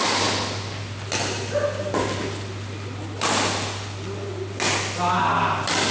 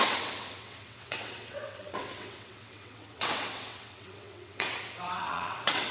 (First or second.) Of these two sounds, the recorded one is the first